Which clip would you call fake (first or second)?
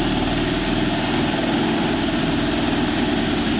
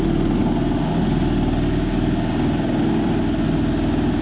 first